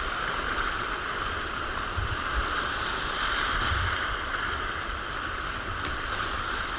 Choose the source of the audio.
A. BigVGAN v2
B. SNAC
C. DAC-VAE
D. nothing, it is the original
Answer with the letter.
D